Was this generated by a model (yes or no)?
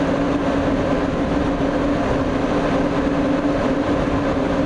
no